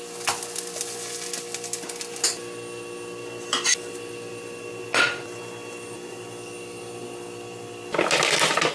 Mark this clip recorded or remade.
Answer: recorded